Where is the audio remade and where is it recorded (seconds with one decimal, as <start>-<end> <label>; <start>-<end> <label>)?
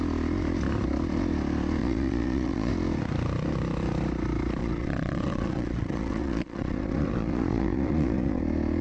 0.0-1.8 recorded; 1.8-2.7 remade; 2.7-4.6 recorded; 4.6-8.4 remade; 8.4-8.8 recorded